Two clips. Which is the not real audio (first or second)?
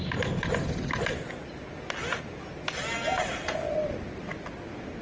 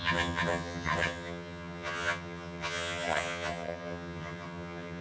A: second